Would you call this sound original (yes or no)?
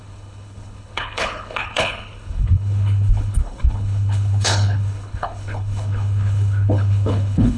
no